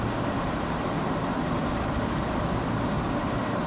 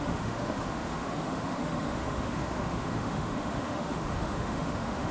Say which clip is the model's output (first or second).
second